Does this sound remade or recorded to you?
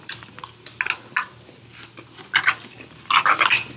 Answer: recorded